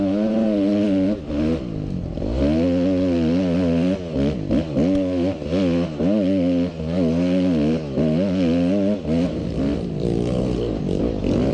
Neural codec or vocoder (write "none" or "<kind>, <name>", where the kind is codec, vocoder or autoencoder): none